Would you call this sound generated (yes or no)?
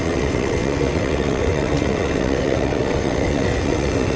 yes